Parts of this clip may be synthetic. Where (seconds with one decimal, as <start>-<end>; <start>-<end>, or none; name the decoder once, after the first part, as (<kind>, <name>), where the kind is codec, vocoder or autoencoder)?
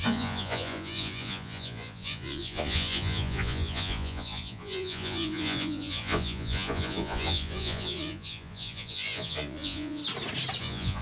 0.0-10.0 (vocoder, Vocos); 10.6-11.0